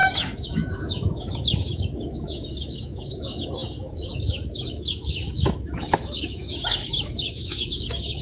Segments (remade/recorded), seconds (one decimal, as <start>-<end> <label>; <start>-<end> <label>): 0.0-8.2 remade